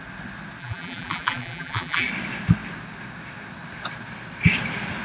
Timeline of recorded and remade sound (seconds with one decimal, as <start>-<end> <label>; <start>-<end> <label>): 0.0-0.6 recorded; 0.6-2.1 remade; 2.1-5.0 recorded